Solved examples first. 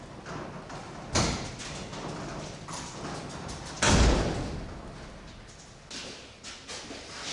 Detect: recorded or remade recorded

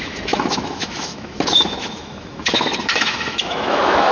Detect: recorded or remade remade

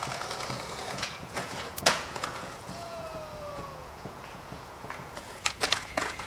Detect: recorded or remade remade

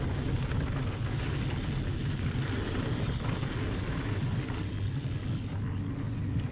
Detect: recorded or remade recorded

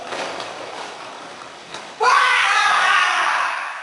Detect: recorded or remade remade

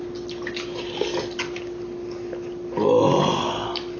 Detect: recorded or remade recorded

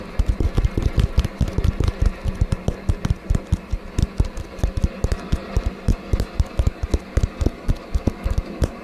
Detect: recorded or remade recorded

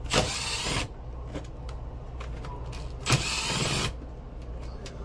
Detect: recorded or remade recorded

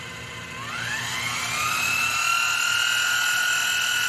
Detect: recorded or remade recorded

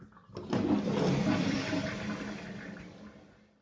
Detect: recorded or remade recorded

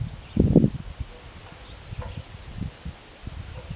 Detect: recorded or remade recorded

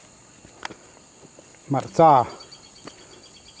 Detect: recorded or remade recorded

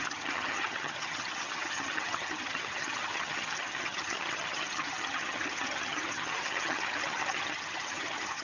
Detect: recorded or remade remade